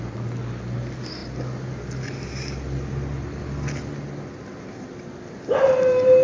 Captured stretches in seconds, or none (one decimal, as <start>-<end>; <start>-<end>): 0.0-6.2